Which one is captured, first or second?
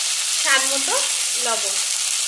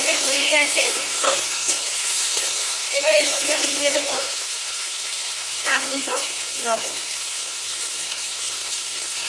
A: first